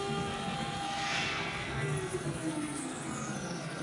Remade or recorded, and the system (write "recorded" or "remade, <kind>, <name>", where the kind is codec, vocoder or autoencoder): remade, codec, SNAC